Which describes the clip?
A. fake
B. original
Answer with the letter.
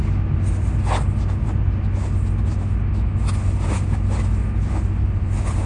B